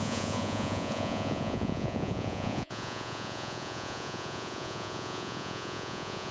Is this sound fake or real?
fake